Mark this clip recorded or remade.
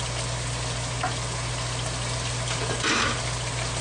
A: recorded